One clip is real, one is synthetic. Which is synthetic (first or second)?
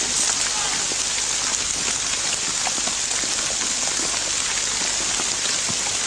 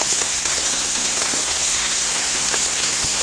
second